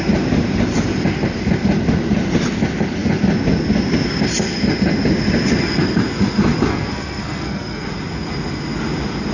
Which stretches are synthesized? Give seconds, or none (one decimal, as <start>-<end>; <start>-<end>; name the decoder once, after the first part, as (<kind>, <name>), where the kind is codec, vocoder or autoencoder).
6.7-7.9 (codec, SNAC)